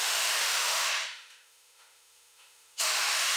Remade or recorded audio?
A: remade